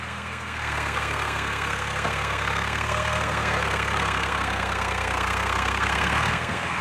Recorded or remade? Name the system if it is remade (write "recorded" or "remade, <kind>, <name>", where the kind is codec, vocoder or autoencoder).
remade, codec, SNAC